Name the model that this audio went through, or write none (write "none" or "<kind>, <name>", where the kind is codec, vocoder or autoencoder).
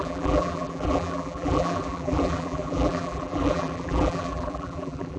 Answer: vocoder, BigVGAN v2